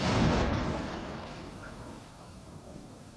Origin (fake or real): fake